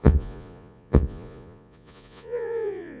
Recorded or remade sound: remade